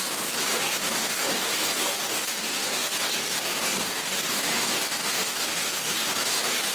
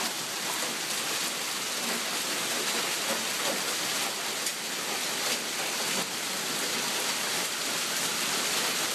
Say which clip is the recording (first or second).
second